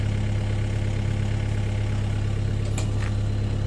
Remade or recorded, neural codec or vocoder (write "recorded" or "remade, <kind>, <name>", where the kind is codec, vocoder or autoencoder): recorded